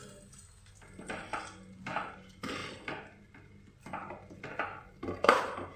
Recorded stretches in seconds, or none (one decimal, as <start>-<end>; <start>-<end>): 0.0-2.6; 4.1-5.8